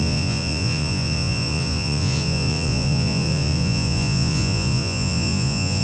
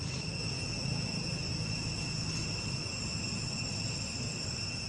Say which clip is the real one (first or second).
second